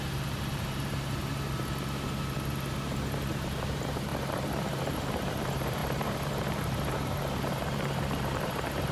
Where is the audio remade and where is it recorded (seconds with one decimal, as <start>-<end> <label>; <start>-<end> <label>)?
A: 0.0-1.2 remade; 1.2-3.3 recorded; 3.3-4.1 remade; 4.1-4.8 recorded; 4.8-8.9 remade